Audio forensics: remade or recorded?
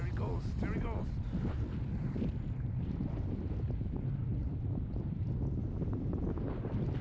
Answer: recorded